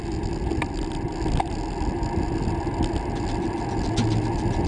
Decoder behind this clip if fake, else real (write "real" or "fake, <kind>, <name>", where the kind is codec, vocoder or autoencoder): real